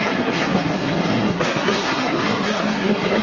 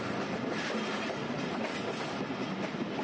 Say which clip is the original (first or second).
second